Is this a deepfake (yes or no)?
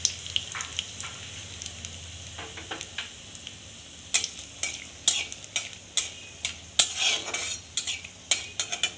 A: no